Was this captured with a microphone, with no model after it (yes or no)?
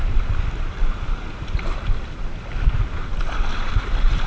yes